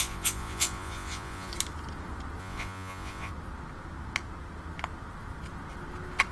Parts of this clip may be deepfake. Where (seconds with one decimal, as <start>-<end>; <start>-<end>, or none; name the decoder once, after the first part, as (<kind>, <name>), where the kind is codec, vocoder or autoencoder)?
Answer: 0.0-1.5 (vocoder, Vocos); 2.4-3.3